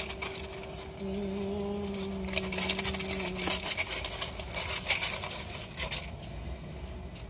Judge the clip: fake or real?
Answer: real